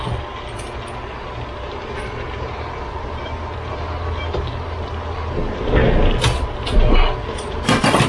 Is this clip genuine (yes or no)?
yes